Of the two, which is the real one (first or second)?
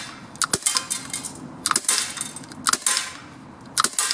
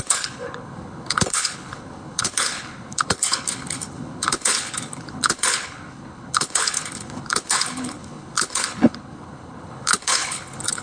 first